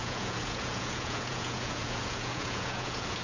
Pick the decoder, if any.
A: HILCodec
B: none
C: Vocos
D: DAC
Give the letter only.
C